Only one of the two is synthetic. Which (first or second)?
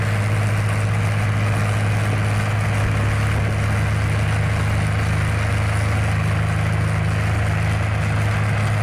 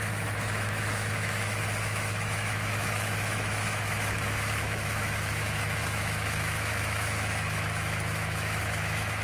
second